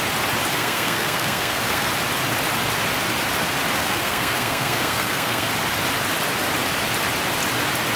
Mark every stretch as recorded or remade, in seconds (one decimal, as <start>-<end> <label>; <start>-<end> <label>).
0.0-0.5 recorded; 0.5-1.9 remade; 1.9-3.8 recorded; 3.8-5.5 remade; 5.5-8.0 recorded